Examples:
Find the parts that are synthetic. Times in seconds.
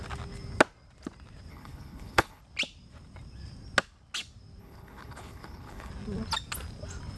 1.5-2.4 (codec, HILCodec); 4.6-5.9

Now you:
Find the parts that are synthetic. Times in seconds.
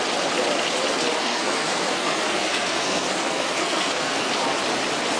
1.2-4.3 (codec, SNAC)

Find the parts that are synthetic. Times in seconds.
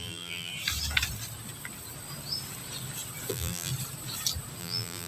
0.0-0.5 (vocoder, BigVGAN v2); 3.3-3.7; 4.6-5.1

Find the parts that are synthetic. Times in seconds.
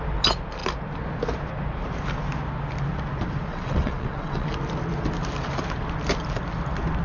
3.5-4.5 (vocoder, WaveNeXt)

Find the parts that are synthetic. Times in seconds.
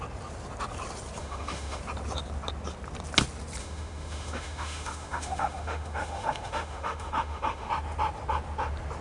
1.2-1.8 (autoencoder, DAC-VAE); 3.6-7.7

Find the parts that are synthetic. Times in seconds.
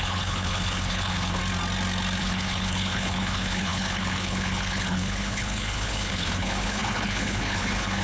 0.0-1.4 (codec, HILCodec); 2.2-8.0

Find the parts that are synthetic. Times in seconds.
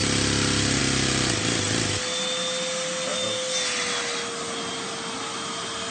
none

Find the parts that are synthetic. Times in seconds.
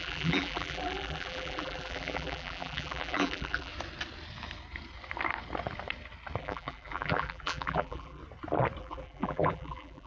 0.0-3.7 (vocoder, BigVGAN v2); 6.4-8.2; 8.8-10.1